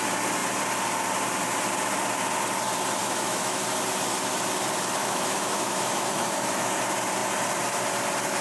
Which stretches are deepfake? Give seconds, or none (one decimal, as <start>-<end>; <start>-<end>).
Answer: 3.0-3.6; 5.0-6.7